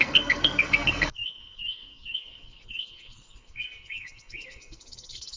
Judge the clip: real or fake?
fake